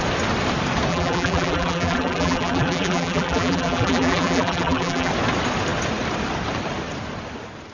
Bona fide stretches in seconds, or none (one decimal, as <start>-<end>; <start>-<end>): 0.0-0.9; 5.1-7.7